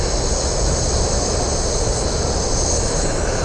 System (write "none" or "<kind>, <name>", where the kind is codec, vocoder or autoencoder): none